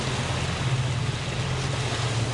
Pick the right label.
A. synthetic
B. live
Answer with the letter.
B